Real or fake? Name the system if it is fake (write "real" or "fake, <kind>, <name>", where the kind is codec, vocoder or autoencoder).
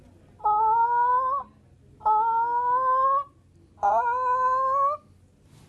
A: real